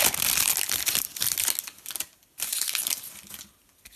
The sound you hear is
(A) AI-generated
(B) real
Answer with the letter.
B